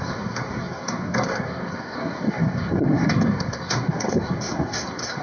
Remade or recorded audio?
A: remade